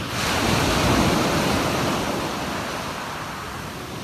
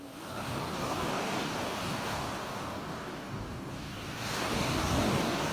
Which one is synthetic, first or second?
second